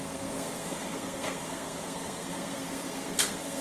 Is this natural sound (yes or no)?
no